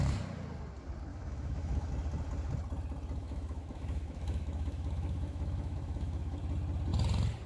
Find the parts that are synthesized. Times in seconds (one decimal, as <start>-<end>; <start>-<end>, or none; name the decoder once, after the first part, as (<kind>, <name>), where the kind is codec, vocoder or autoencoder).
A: 1.1-1.9 (autoencoder, DAC-VAE); 3.2-6.4